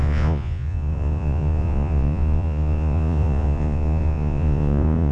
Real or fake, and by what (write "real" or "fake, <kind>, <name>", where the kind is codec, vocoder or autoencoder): fake, vocoder, Vocos